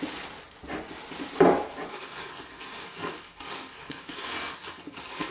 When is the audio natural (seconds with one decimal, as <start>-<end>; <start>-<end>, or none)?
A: 0.0-1.9